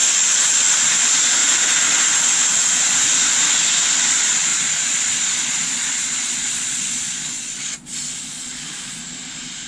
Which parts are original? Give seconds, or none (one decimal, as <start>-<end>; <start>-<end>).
1.4-4.1; 9.0-9.7